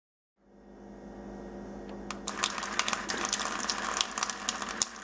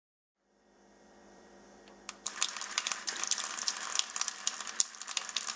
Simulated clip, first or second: second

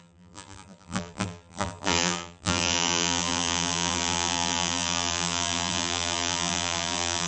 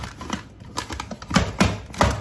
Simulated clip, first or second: first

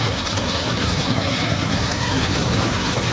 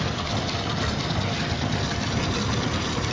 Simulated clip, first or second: first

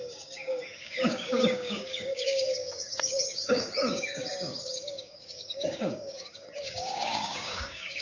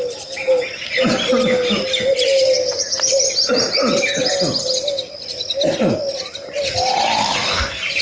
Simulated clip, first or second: first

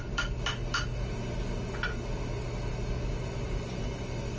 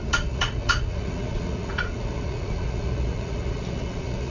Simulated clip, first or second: second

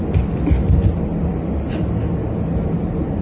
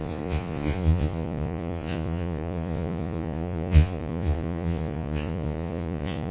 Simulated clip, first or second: second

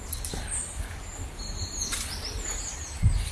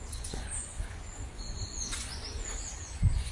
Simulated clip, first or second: second